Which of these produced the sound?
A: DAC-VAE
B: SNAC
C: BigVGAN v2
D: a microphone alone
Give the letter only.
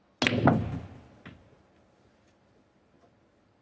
D